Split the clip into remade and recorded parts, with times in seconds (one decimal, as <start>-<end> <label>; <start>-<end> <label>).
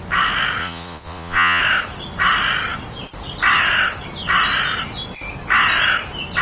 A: 0.0-0.6 recorded; 0.6-1.6 remade; 1.6-6.4 recorded